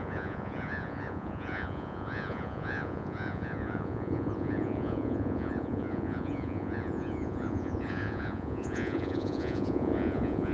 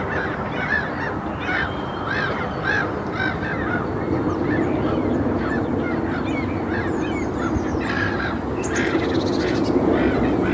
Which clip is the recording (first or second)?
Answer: second